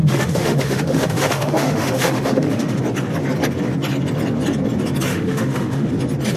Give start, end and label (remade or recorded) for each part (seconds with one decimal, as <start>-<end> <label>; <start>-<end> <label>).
0.0-2.8 remade; 2.8-5.1 recorded; 5.1-5.9 remade; 5.9-6.4 recorded

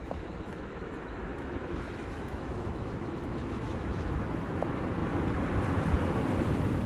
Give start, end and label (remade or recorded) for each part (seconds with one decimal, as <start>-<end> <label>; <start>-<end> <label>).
0.0-4.1 remade; 4.1-6.9 recorded

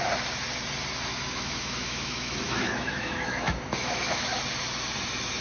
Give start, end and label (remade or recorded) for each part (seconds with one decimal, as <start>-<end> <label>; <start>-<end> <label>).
0.0-1.1 recorded; 1.1-4.3 remade; 4.3-5.4 recorded

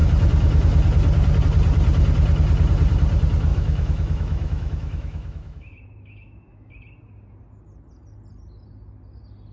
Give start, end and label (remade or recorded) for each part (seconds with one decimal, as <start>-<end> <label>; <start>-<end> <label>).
0.0-3.5 recorded; 3.5-6.7 remade; 6.7-9.5 recorded